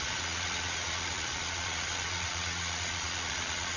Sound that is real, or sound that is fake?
fake